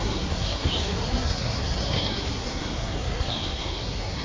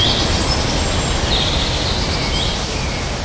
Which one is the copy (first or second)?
first